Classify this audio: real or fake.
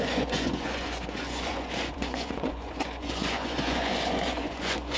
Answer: fake